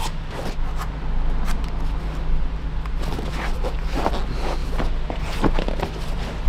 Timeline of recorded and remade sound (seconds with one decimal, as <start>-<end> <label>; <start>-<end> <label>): 0.0-3.1 recorded; 3.1-4.1 remade; 4.1-4.6 recorded; 4.6-6.5 remade